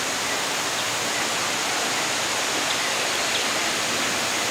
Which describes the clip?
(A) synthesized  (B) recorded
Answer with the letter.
B